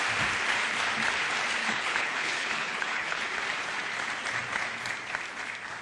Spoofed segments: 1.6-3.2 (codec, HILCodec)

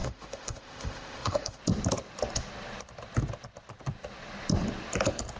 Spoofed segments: 0.0-1.6 (autoencoder, DAC-VAE)

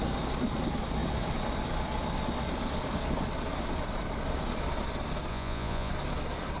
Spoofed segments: 5.3-5.9 (vocoder, Vocos)

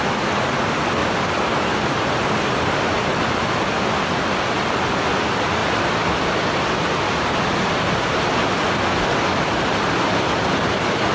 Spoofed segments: 1.0-2.6 (vocoder, BigVGAN v2)

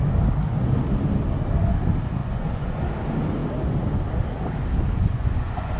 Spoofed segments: 2.2-2.8 (vocoder, Vocos); 5.0-5.8